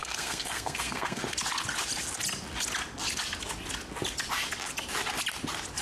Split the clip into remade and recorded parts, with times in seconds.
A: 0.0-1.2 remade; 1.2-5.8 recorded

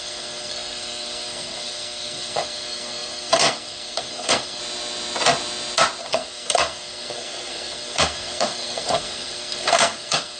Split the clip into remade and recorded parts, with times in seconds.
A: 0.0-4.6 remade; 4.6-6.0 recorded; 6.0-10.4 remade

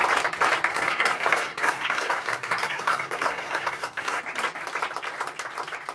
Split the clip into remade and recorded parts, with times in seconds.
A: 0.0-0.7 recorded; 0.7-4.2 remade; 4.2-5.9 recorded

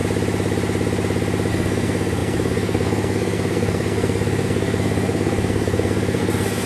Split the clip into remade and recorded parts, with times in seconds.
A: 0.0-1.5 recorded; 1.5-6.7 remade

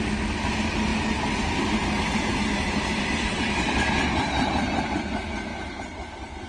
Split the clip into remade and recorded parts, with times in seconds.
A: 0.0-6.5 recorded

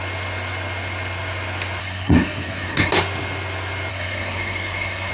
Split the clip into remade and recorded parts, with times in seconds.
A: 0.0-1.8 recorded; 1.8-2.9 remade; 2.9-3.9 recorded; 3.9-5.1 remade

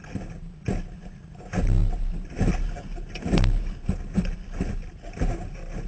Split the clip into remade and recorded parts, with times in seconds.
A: 0.0-5.9 recorded

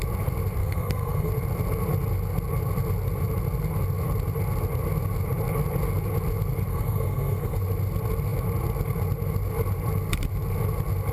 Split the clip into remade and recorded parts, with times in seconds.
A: 0.0-0.6 recorded; 0.6-1.3 remade; 1.3-6.7 recorded; 6.7-7.6 remade; 7.6-11.1 recorded